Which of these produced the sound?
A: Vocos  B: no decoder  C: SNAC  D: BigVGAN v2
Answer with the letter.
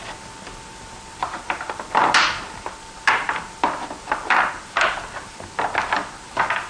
B